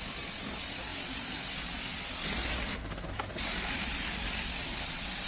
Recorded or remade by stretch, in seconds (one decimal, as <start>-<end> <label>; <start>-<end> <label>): 0.0-5.3 recorded